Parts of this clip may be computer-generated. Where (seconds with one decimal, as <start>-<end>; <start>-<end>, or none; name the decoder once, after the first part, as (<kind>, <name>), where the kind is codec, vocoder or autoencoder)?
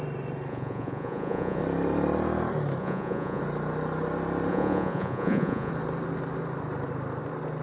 0.5-1.6 (vocoder, Vocos); 2.8-3.4; 4.5-5.7